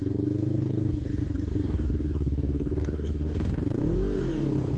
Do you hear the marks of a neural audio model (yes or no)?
yes